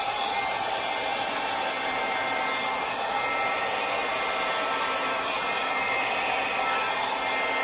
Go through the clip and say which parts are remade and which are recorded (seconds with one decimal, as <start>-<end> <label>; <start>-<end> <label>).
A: 0.0-7.6 recorded